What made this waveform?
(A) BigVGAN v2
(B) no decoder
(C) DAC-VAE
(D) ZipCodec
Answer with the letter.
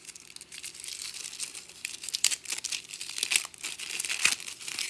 B